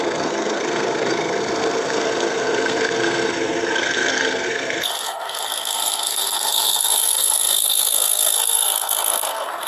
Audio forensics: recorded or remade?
remade